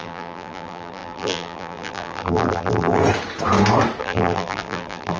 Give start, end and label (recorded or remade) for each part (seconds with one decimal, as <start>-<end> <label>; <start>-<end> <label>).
0.0-3.0 remade; 3.0-4.0 recorded; 4.0-5.2 remade